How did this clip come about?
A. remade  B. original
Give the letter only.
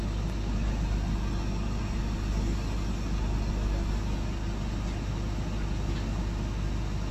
B